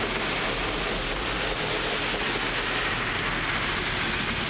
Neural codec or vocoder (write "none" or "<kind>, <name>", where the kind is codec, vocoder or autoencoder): none